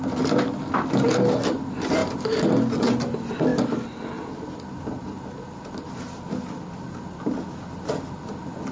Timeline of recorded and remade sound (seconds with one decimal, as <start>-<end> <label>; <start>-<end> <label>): 0.0-8.7 recorded